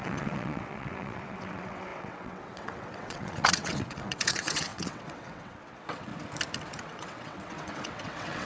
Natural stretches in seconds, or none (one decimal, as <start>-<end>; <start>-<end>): 6.1-6.8